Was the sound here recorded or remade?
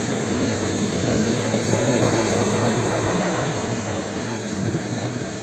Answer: remade